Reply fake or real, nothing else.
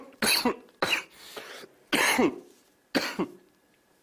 real